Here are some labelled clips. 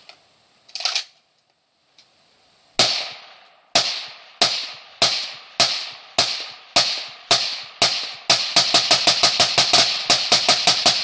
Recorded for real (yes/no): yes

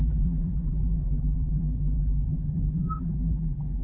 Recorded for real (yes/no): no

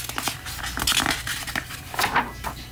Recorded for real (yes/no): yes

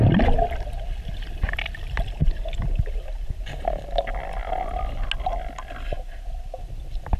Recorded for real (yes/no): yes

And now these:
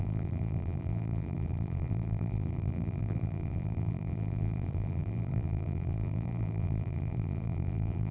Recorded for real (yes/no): no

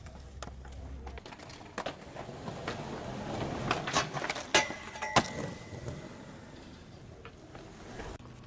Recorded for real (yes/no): yes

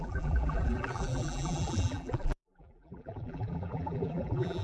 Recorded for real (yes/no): no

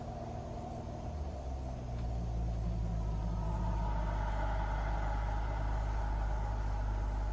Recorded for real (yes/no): yes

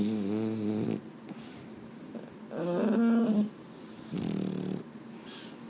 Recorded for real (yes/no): yes